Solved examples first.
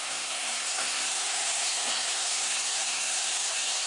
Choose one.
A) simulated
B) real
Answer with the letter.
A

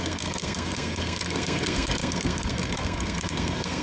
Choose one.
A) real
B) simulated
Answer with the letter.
B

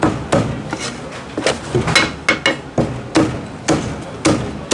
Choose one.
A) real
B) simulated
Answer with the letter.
A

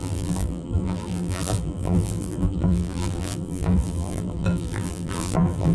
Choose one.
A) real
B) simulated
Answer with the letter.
B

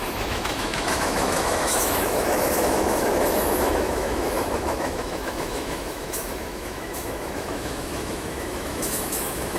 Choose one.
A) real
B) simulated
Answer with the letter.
B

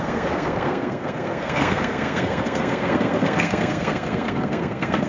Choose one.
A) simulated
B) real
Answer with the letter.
A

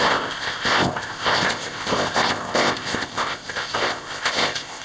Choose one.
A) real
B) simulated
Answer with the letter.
B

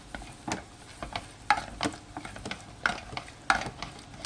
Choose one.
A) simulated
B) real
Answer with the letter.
B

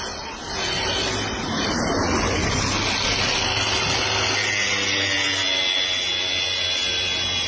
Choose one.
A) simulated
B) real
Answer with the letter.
B